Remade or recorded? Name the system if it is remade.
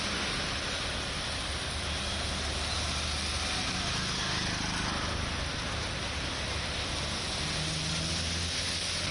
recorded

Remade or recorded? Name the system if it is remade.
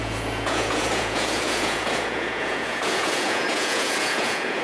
remade, vocoder, Vocos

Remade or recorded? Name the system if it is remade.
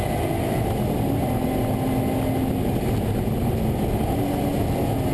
recorded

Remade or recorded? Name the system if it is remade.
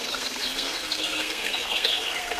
remade, codec, SNAC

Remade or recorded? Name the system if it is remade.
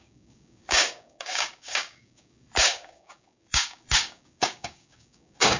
remade, codec, DAC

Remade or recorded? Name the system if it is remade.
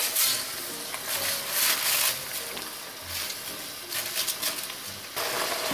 recorded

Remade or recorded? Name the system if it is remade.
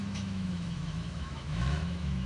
remade, autoencoder, DAC-VAE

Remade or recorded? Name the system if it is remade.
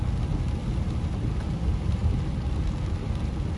recorded